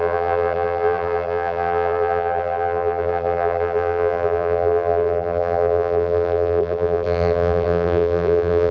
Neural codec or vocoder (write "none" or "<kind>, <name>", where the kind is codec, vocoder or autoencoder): vocoder, BigVGAN v2